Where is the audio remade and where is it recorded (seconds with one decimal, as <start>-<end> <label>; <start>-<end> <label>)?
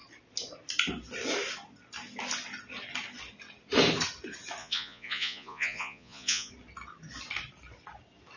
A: 0.0-4.6 recorded; 4.6-6.5 remade; 6.5-8.4 recorded